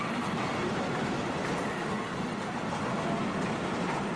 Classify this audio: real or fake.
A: real